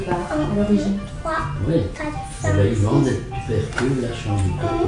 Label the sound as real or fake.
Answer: real